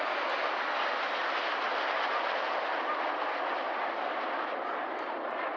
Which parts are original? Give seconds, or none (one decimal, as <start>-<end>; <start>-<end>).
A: 0.0-5.6